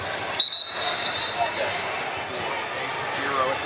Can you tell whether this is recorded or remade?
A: recorded